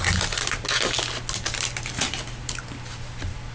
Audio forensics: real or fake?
real